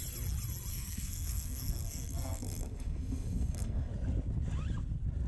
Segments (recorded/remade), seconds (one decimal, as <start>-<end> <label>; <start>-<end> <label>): 0.0-0.7 recorded; 0.7-3.9 remade; 3.9-5.3 recorded